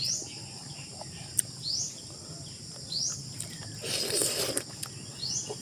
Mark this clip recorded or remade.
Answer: recorded